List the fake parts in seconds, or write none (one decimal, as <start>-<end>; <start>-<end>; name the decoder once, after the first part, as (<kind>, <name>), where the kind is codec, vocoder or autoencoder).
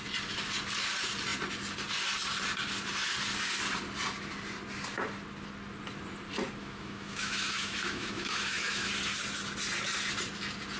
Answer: 6.6-8.9 (autoencoder, DAC-VAE)